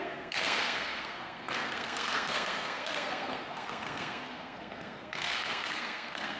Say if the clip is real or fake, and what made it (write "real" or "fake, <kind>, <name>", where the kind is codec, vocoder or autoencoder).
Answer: fake, codec, SNAC